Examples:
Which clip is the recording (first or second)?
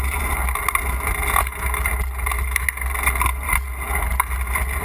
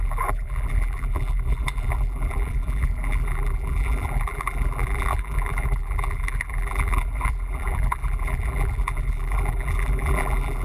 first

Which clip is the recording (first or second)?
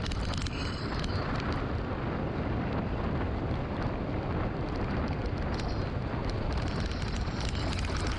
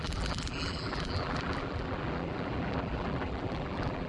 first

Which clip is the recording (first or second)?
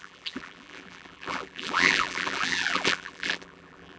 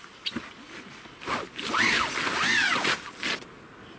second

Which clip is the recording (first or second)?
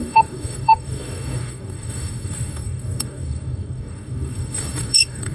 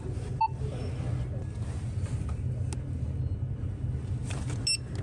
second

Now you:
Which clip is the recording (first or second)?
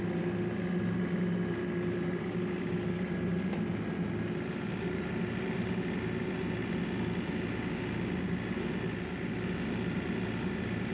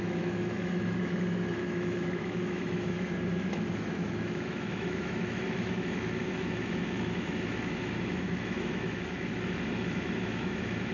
first